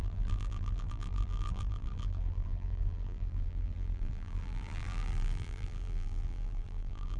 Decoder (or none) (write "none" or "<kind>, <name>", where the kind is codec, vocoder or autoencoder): vocoder, BigVGAN v2